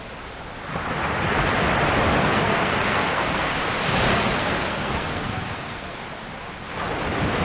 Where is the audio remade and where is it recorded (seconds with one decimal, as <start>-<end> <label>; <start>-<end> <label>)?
0.0-2.1 recorded; 2.1-3.5 remade; 3.5-4.1 recorded; 4.1-6.0 remade; 6.0-7.4 recorded